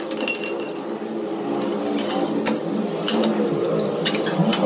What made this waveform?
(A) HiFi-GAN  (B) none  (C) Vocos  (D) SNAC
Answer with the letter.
B